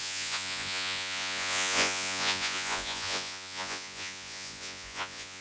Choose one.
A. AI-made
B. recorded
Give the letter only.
A